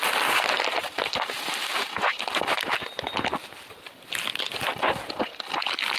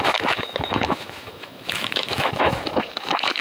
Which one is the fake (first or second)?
second